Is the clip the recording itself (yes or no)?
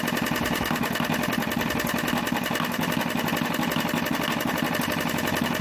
yes